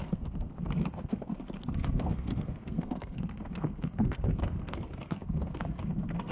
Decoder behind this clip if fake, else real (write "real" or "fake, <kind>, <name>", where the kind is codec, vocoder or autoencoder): fake, codec, SNAC